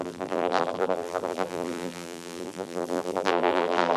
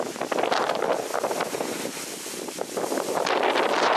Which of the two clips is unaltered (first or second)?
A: second